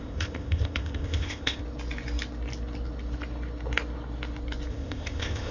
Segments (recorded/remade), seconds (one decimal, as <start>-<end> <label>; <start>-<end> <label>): 0.0-1.6 remade; 1.6-4.7 recorded; 4.7-5.5 remade